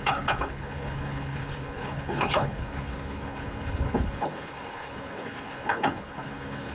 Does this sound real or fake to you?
fake